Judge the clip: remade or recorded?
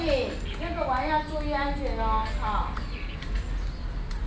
recorded